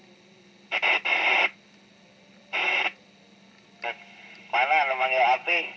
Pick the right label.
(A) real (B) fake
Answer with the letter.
A